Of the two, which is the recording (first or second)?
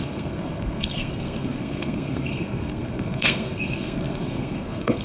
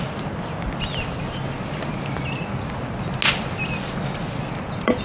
second